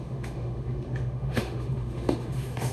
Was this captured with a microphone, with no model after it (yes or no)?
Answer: no